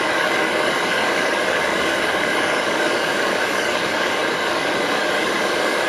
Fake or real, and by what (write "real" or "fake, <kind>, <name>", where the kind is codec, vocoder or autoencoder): fake, codec, DAC